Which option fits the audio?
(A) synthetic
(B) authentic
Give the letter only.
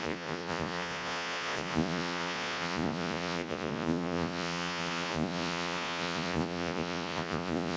A